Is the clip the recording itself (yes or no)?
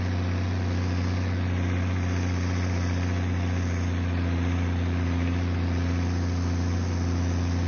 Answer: yes